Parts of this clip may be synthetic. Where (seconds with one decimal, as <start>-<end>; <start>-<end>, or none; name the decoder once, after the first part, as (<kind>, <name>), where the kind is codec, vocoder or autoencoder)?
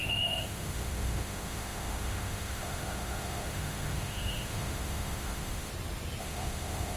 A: 0.0-5.7 (autoencoder, DAC-VAE); 6.2-7.0